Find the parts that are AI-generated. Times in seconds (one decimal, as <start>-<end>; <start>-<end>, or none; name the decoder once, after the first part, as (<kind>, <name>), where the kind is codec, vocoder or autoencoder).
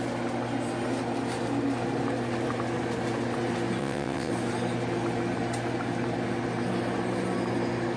3.8-4.3 (vocoder, WaveNeXt)